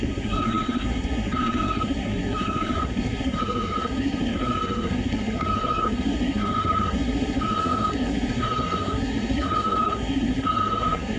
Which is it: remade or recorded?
remade